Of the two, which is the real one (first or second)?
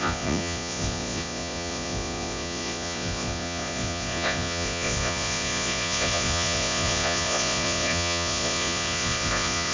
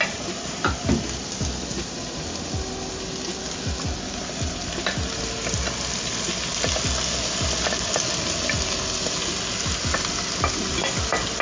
second